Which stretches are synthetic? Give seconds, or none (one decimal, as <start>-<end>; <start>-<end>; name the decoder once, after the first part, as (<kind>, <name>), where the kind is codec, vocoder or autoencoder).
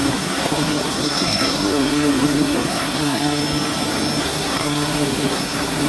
0.0-3.4 (codec, SNAC); 4.2-5.9